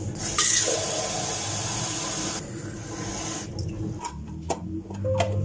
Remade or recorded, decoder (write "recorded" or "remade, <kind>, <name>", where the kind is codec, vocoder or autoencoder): recorded